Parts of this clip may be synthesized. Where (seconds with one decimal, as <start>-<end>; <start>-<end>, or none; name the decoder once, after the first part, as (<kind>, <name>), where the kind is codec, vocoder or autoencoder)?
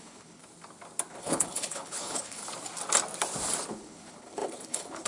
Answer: 0.0-0.4 (codec, HILCodec); 1.1-2.4; 3.7-5.1